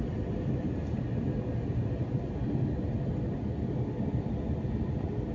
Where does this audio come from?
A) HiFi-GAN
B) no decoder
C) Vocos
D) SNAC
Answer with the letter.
B